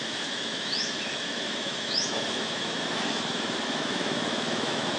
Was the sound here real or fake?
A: fake